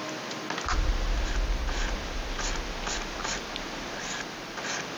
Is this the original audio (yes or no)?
yes